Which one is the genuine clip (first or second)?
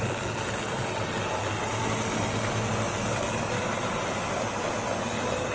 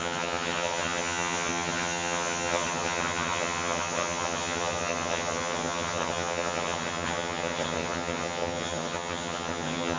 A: first